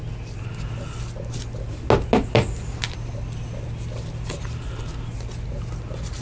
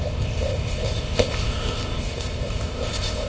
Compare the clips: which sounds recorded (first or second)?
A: first